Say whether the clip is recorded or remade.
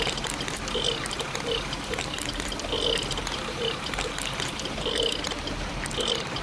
recorded